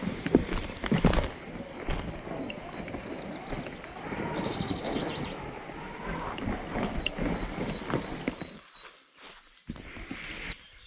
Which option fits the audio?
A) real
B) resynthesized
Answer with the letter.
A